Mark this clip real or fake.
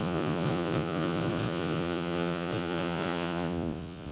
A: fake